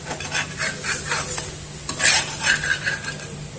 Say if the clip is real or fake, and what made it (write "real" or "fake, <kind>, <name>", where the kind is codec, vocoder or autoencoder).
real